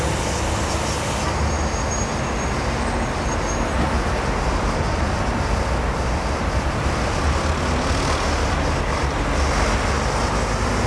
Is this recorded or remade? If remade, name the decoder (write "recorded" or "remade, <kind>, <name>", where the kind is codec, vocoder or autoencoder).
recorded